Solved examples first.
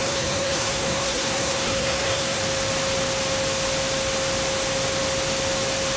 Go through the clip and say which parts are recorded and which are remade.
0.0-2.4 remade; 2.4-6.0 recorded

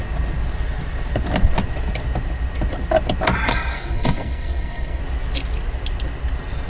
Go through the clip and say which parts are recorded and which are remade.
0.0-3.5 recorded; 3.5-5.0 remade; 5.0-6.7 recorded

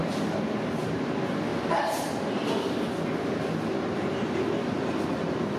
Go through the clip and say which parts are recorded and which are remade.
0.0-1.1 remade; 1.1-5.6 recorded

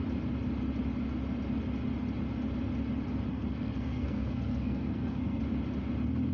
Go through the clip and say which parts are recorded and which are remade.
0.0-3.3 recorded; 3.3-5.4 remade; 5.4-6.3 recorded

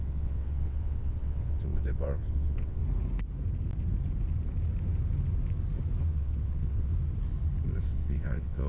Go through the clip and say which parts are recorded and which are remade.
0.0-2.8 remade; 2.8-6.1 recorded; 6.1-6.9 remade; 6.9-7.8 recorded; 7.8-8.7 remade